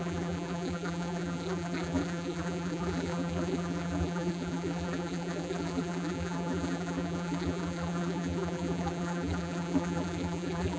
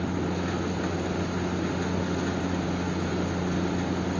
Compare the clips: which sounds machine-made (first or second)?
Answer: first